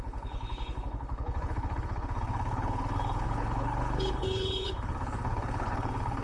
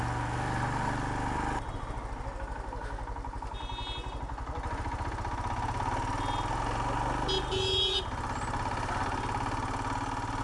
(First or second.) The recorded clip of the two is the second